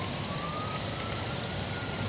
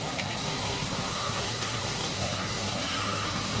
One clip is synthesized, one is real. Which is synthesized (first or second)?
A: second